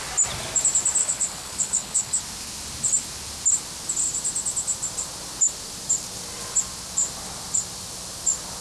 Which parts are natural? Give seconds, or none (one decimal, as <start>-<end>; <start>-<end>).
0.0-1.0; 2.2-8.6